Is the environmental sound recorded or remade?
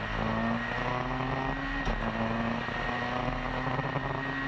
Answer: recorded